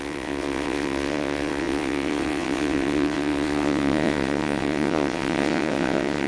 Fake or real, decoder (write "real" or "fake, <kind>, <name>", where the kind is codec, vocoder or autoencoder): fake, vocoder, WaveNeXt